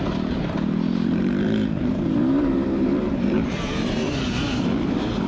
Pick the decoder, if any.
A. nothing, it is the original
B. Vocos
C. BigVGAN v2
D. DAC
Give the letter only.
C